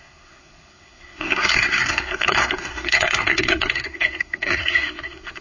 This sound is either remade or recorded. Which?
remade